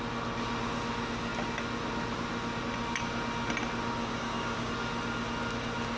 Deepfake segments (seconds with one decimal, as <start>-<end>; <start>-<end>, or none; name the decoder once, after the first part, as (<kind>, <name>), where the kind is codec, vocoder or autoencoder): 4.0-4.7 (codec, DAC)